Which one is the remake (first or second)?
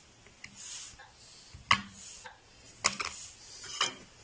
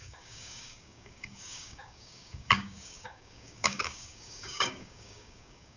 second